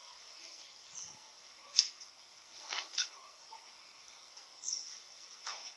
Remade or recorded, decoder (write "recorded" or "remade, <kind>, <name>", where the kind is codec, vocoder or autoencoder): remade, codec, SNAC